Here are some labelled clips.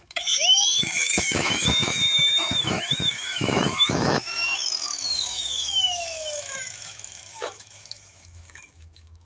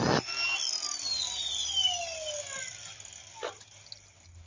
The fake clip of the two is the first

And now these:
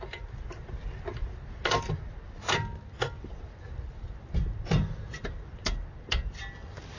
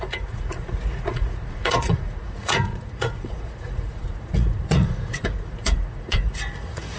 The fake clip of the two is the second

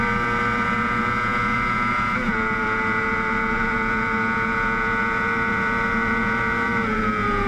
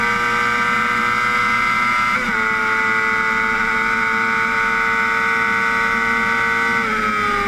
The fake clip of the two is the first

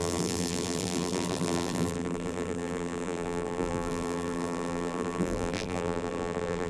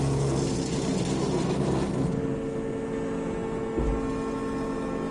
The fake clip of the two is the first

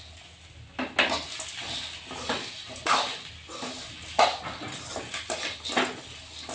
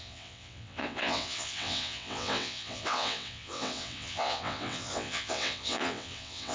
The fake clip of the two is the second